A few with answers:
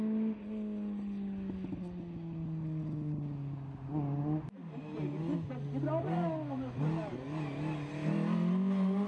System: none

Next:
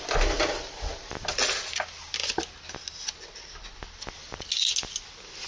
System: none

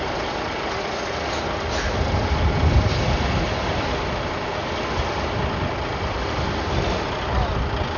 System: none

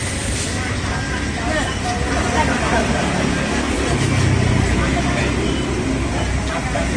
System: none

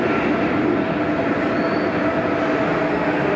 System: none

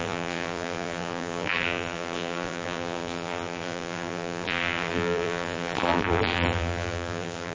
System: vocoder, BigVGAN v2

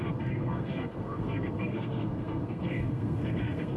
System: codec, SNAC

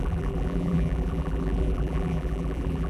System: vocoder, BigVGAN v2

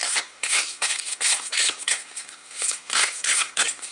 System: codec, SNAC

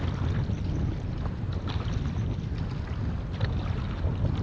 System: none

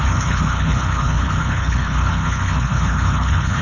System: codec, HILCodec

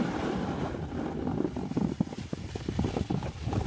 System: none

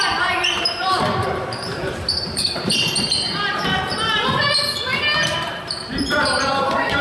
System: vocoder, BigVGAN v2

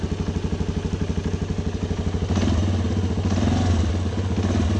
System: none